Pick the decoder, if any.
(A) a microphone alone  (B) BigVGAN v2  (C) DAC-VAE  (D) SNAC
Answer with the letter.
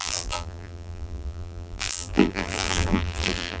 B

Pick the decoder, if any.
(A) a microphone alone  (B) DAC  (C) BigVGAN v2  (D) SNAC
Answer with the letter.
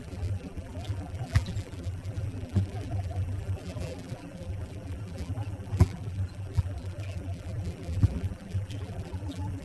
C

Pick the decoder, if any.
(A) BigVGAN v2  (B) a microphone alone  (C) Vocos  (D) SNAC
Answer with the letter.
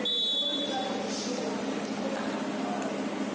B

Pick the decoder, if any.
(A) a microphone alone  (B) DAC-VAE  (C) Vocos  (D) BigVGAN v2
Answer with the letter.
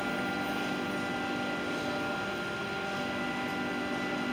A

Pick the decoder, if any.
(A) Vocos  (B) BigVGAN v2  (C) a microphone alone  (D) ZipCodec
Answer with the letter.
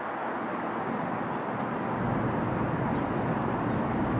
C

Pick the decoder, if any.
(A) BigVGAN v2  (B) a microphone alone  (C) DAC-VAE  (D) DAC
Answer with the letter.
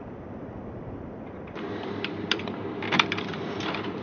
A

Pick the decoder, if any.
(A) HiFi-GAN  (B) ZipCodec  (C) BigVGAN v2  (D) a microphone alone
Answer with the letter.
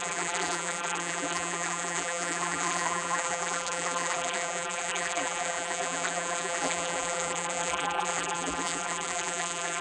C